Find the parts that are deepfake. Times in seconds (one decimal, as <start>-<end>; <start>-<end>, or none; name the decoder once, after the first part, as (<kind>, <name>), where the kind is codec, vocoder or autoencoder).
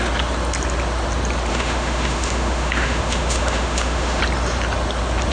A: 1.5-4.2 (autoencoder, DAC-VAE)